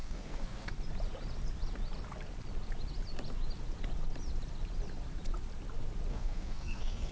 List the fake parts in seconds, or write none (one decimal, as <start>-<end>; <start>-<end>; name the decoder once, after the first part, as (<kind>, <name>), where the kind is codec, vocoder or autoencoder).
0.0-0.7 (codec, SNAC); 6.1-7.1